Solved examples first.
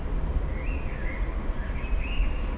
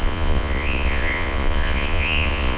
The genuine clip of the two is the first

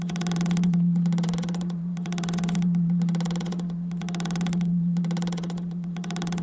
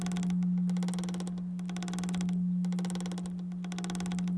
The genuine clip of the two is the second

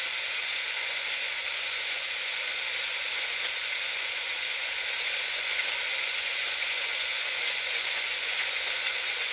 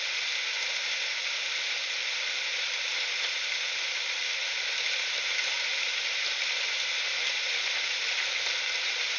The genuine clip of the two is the second